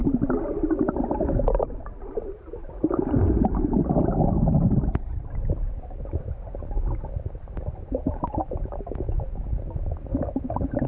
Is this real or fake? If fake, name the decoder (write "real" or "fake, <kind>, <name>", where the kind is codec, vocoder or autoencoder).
real